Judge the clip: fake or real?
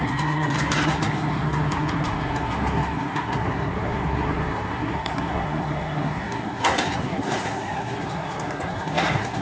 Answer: fake